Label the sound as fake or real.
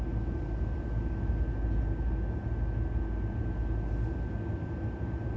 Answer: real